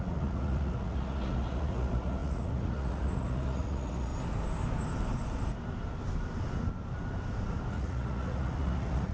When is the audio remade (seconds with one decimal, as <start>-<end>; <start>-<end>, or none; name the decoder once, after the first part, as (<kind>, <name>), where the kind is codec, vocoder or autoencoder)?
0.0-4.1 (vocoder, Vocos); 7.7-9.1